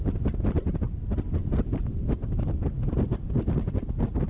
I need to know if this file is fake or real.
real